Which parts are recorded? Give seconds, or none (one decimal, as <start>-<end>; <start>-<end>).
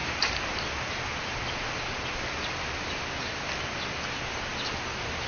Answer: 0.6-5.3